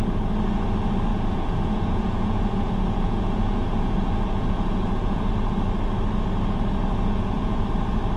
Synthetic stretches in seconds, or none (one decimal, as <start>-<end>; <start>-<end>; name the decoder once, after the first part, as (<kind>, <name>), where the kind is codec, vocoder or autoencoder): 1.1-5.3 (vocoder, Vocos); 6.8-7.6